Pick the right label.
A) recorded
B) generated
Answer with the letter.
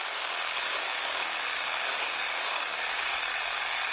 B